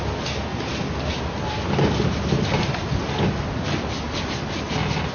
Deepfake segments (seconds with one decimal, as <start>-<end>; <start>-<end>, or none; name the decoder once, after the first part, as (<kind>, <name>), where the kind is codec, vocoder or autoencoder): none